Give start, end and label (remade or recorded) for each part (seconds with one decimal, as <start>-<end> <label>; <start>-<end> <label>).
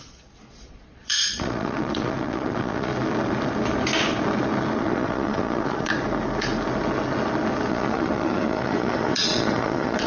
0.0-2.9 remade; 2.9-4.8 recorded; 4.8-5.9 remade; 5.9-7.7 recorded; 7.7-10.1 remade